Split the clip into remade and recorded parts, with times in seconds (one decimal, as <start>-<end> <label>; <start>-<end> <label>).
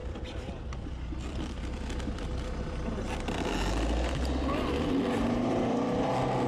0.0-3.2 remade; 3.2-5.2 recorded; 5.2-6.1 remade; 6.1-6.5 recorded